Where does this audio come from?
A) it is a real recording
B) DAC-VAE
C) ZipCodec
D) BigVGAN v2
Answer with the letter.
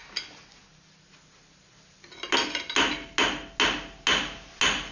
A